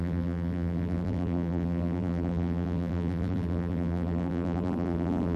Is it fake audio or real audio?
fake